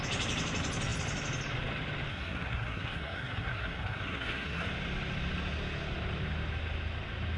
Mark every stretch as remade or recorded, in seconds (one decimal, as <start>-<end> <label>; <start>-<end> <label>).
0.0-2.1 recorded; 2.1-4.7 remade; 4.7-7.4 recorded